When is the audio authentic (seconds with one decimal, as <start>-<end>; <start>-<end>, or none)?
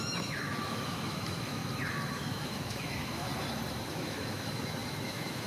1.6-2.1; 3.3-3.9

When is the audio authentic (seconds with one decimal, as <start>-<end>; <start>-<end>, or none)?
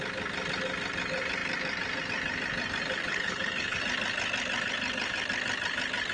0.0-3.0; 3.8-6.1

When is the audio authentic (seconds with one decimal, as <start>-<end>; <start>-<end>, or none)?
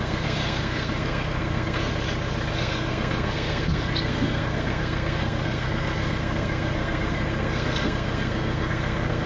1.9-2.5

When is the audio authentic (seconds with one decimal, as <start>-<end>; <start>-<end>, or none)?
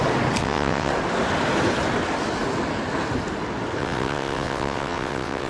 0.0-0.4; 0.9-3.8